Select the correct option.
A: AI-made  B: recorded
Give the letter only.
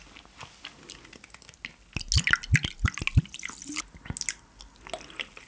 B